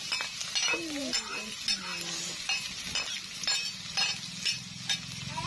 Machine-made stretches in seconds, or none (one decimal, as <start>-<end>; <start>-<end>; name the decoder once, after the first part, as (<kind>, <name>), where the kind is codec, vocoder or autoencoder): none